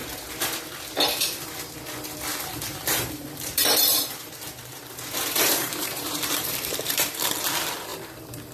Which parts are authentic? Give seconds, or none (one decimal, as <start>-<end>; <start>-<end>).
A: 0.0-2.3; 7.3-8.5